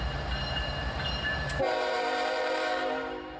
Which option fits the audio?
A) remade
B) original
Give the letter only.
A